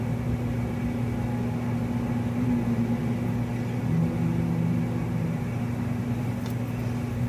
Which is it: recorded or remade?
recorded